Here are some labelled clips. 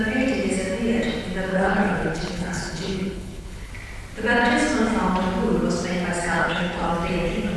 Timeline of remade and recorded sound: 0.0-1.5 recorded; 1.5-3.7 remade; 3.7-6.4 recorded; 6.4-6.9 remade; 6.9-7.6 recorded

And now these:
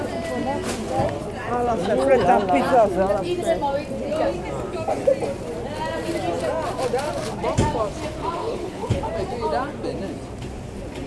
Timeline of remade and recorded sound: 0.0-8.4 recorded; 8.4-9.0 remade; 9.0-11.1 recorded

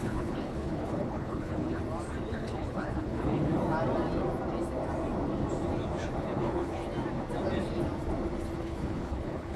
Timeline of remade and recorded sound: 0.0-1.8 remade; 1.8-2.3 recorded; 2.3-3.5 remade; 3.5-6.2 recorded; 6.2-6.8 remade; 6.8-8.6 recorded; 8.6-9.6 remade

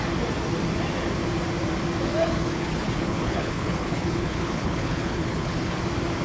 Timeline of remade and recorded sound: 0.0-2.2 recorded; 2.2-5.8 remade; 5.8-6.2 recorded

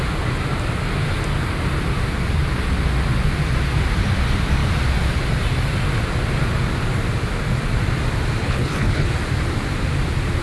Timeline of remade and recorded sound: 0.0-8.4 recorded; 8.4-9.1 remade; 9.1-10.4 recorded